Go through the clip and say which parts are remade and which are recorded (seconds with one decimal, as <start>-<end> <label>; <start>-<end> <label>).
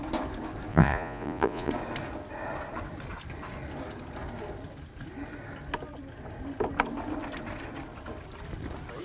0.0-0.7 recorded; 0.7-1.7 remade; 1.7-9.0 recorded